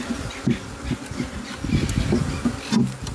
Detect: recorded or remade recorded